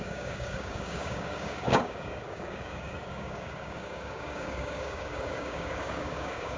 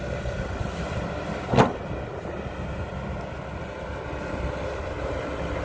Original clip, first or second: second